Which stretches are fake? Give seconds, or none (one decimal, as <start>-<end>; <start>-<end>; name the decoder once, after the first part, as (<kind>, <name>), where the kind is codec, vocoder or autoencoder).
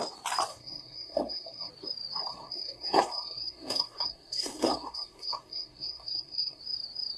0.5-1.7 (codec, SNAC); 2.3-6.6